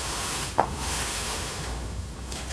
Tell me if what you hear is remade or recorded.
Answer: remade